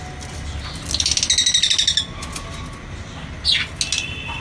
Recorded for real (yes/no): yes